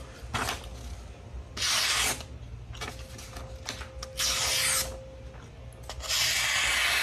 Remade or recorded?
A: recorded